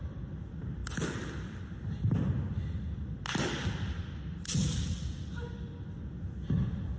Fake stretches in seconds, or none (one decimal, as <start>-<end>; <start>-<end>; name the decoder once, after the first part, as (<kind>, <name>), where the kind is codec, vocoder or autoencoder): none

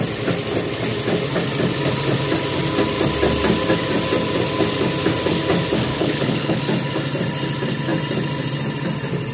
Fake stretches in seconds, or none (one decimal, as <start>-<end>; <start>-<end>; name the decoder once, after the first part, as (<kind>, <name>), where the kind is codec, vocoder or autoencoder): 5.9-6.6 (codec, HILCodec)

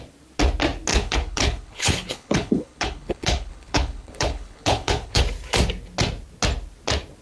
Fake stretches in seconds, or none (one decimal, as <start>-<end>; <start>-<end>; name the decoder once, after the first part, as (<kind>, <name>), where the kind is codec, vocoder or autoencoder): 0.9-5.2 (codec, HILCodec)

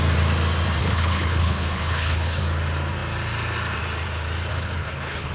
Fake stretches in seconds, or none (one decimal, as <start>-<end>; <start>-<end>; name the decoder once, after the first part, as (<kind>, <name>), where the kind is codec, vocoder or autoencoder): 0.8-2.4 (codec, HILCodec); 4.5-5.3

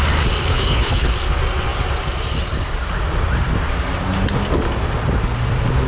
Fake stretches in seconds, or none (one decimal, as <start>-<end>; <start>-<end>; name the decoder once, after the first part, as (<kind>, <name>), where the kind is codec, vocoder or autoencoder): 0.5-1.1 (codec, HILCodec)

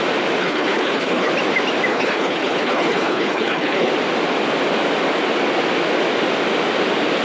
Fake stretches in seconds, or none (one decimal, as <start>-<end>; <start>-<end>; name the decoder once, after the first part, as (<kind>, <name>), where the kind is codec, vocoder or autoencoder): 0.4-1.3 (codec, HILCodec); 1.9-3.9

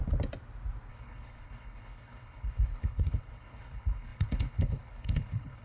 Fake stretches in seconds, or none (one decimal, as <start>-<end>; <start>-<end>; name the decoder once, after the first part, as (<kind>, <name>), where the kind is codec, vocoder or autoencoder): 0.9-5.6 (codec, HILCodec)

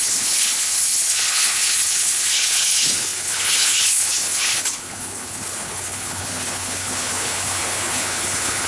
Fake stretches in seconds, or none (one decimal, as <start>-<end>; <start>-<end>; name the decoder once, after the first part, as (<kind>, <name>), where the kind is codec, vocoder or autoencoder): 0.0-8.7 (codec, HILCodec)